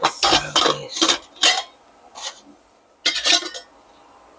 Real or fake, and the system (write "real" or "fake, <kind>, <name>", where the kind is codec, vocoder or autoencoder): real